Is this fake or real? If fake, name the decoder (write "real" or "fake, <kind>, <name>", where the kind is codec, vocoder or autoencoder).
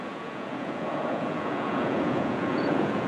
fake, vocoder, Vocos